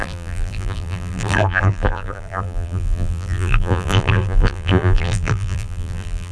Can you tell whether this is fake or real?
fake